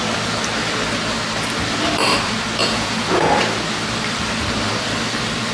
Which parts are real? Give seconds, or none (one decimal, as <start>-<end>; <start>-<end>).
0.0-2.6; 3.3-5.5